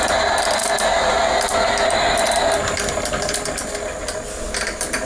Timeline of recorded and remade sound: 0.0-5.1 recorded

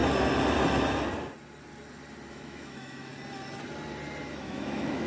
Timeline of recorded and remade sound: 0.0-2.3 recorded; 2.3-3.1 remade; 3.1-4.2 recorded; 4.2-5.1 remade

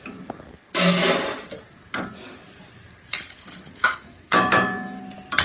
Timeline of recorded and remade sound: 0.0-3.8 recorded; 3.8-5.0 remade; 5.0-5.4 recorded

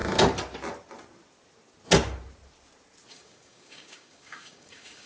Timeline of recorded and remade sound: 0.0-3.1 recorded; 3.1-5.1 remade

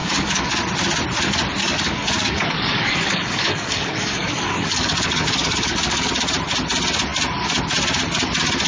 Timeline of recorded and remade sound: 0.0-0.5 remade; 0.5-1.6 recorded; 1.6-6.1 remade; 6.1-8.7 recorded